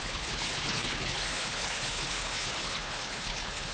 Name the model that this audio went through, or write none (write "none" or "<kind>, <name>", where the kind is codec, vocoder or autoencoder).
codec, HILCodec